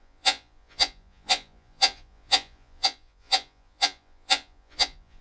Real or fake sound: fake